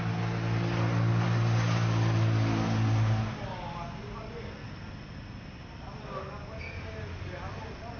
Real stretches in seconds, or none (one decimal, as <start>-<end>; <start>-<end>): 0.0-8.0